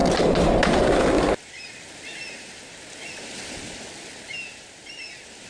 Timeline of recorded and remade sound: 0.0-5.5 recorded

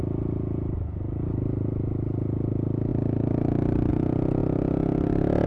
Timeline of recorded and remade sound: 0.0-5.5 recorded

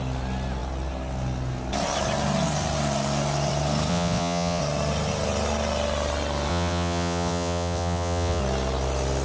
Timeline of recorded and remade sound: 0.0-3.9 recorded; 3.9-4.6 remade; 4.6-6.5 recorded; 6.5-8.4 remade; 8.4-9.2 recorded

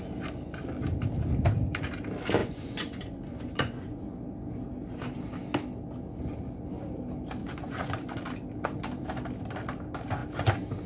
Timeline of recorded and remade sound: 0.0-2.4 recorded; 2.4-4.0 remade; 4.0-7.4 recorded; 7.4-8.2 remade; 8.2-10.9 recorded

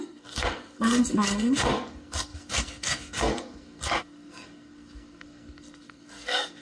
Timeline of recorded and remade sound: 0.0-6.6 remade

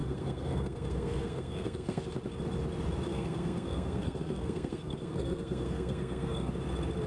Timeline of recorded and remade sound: 0.0-2.0 remade; 2.0-3.1 recorded; 3.1-6.5 remade; 6.5-7.1 recorded